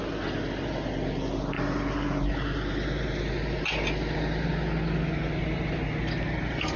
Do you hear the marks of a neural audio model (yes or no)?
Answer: no